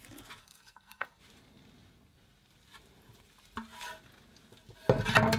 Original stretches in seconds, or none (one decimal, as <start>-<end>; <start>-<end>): 0.0-0.4; 1.2-5.4

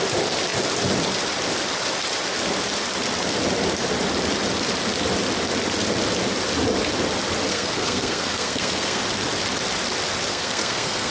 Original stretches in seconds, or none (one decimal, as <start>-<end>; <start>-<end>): 0.0-7.5; 9.0-10.3

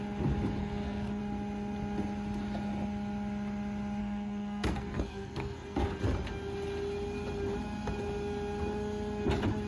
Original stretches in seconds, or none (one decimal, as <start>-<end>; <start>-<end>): 0.0-0.6; 1.2-4.0; 6.0-9.7

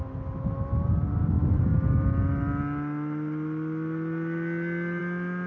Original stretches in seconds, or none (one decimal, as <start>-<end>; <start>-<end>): 0.0-5.5

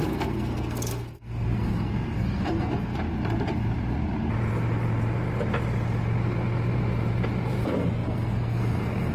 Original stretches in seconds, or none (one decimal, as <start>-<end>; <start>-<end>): 2.9-7.6

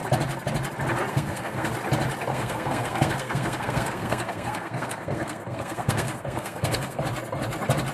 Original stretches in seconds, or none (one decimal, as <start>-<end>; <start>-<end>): 0.0-1.1; 1.7-2.3; 7.0-7.9

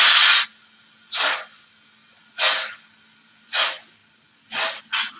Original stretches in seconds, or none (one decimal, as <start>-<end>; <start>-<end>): 0.0-5.2